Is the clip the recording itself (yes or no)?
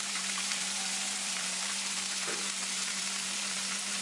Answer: no